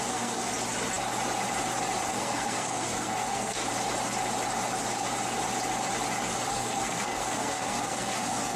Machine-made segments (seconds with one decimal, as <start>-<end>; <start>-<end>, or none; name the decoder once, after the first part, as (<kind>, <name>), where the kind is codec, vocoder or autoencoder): 0.0-0.5 (codec, SNAC); 2.1-3.6; 6.5-8.6